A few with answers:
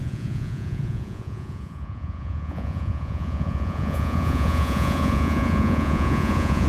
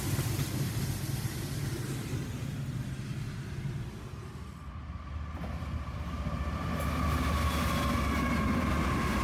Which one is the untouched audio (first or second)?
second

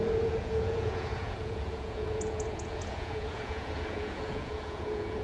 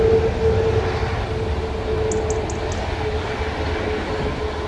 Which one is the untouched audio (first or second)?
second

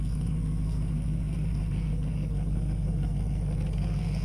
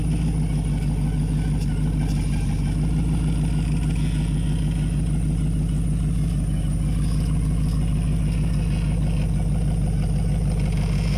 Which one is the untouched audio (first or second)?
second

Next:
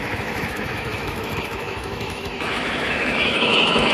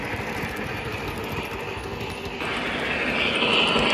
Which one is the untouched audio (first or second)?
second